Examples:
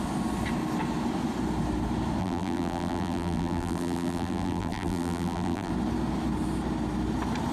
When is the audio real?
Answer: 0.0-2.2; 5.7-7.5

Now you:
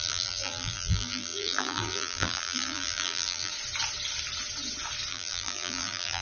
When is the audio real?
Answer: 3.5-5.1

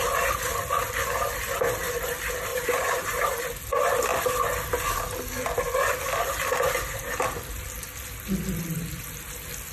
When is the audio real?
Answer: 0.0-2.5; 3.2-9.7

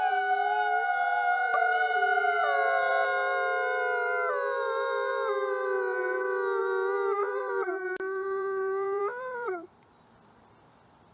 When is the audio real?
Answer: 0.0-7.2; 10.4-11.1

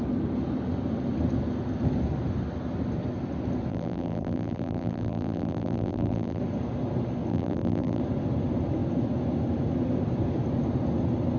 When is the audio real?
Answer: 0.0-3.7; 6.4-7.3; 8.0-11.4

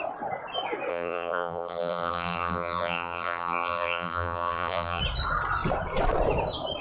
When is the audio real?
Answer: 0.0-0.9; 5.0-6.8

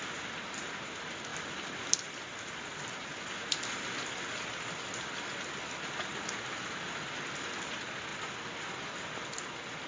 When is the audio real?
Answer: 0.0-1.3; 3.1-9.9